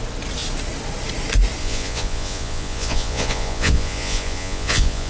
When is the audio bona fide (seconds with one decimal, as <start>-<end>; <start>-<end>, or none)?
0.0-1.6